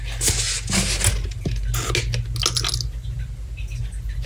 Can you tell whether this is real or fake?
real